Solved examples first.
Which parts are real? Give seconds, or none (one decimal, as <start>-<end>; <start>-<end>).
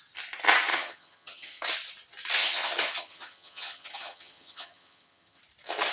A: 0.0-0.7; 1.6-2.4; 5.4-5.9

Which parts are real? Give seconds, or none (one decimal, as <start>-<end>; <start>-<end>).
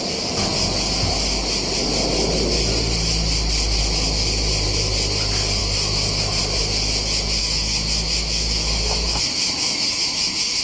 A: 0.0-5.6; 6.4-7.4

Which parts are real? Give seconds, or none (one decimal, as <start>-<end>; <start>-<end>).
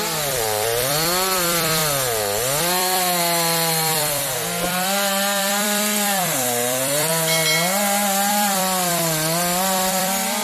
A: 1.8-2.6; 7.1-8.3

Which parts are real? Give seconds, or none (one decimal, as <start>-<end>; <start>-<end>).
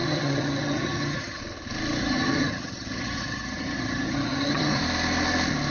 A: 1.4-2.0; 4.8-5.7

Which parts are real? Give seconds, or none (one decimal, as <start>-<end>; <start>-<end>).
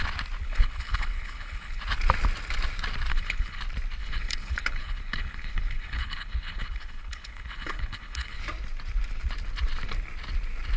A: 0.0-0.4; 1.8-3.1; 3.6-4.0; 8.4-10.8